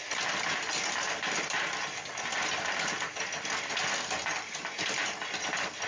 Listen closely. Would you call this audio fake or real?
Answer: real